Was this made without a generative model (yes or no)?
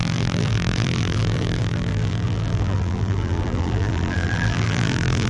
no